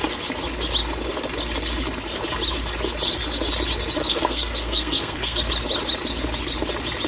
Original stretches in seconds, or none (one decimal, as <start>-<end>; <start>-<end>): 0.0-4.0; 5.5-7.1